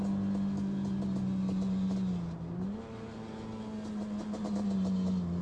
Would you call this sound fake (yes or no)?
no